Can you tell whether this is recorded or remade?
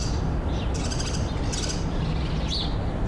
recorded